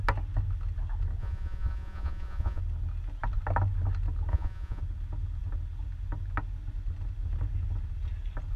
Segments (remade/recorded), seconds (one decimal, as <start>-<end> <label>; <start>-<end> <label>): 0.0-1.2 recorded; 1.2-2.6 remade; 2.6-4.3 recorded; 4.3-4.8 remade; 4.8-8.6 recorded